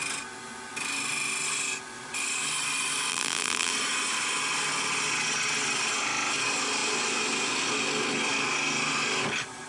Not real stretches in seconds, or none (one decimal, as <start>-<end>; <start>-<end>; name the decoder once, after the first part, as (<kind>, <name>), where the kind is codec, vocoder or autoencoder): 3.1-3.7 (vocoder, BigVGAN v2)